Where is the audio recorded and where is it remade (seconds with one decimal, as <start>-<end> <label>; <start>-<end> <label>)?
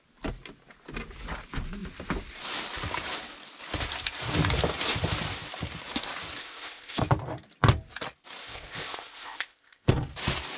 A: 0.0-6.4 recorded; 6.4-7.0 remade; 7.0-8.4 recorded; 8.4-9.9 remade; 9.9-10.6 recorded